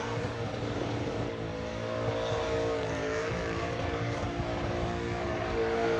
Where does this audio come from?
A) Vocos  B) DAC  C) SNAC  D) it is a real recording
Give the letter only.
B